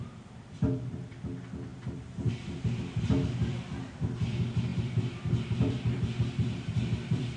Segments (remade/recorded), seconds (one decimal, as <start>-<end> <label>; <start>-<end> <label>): 0.0-7.4 remade